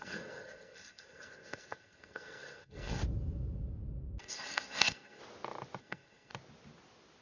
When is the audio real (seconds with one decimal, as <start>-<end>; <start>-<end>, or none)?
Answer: 3.0-4.2; 5.2-5.8; 6.3-7.2